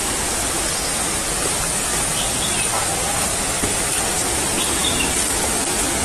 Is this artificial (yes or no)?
no